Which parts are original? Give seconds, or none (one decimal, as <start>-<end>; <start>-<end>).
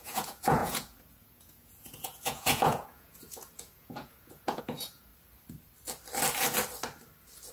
5.1-7.5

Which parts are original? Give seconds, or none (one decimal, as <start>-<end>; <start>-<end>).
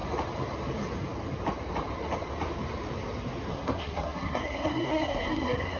0.0-3.5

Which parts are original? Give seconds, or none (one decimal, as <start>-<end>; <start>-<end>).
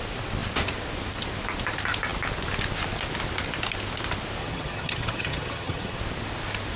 0.0-4.4; 6.0-6.8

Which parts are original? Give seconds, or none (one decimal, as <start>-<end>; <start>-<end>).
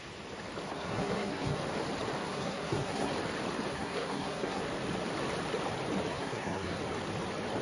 0.0-0.7; 1.6-2.2; 3.1-3.7; 4.6-6.1; 6.8-7.6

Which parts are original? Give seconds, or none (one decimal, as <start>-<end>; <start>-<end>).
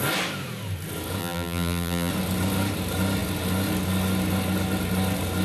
0.0-1.2; 2.1-5.4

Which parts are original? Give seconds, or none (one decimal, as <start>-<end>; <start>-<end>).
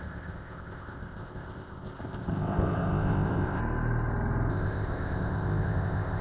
3.6-4.5